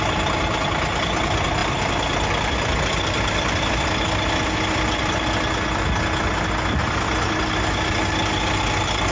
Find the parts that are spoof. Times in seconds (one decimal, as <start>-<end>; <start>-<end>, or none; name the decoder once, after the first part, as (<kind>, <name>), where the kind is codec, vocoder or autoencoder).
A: none